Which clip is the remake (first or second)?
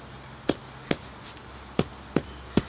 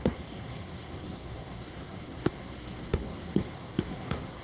second